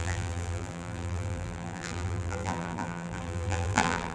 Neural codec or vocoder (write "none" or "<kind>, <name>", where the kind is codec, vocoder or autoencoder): vocoder, BigVGAN v2